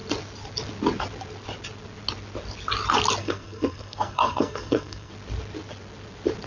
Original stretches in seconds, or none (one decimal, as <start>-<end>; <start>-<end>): 0.0-3.2; 5.1-6.5